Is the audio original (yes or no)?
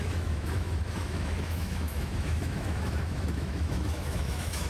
no